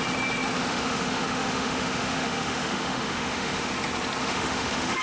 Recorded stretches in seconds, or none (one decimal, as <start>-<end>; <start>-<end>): 0.0-0.7; 3.7-4.2